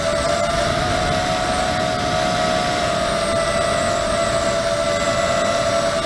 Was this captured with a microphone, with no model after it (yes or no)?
yes